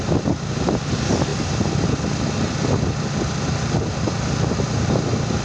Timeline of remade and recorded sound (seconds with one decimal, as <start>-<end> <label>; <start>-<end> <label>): 0.0-5.4 recorded